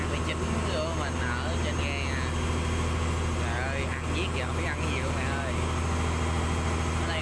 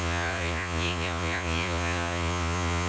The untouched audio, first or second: first